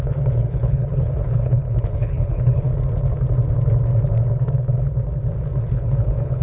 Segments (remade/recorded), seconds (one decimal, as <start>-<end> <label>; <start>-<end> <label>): 0.0-2.7 remade; 2.7-5.6 recorded; 5.6-6.4 remade

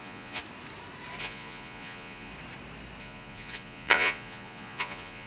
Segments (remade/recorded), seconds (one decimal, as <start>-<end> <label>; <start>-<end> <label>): 0.0-0.4 remade; 0.4-1.2 recorded; 1.2-2.3 remade; 2.3-3.0 recorded; 3.0-5.3 remade

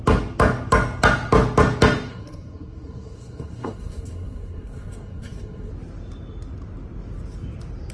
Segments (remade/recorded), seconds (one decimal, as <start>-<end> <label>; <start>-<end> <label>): 0.0-2.1 recorded; 2.1-5.7 remade; 5.7-7.9 recorded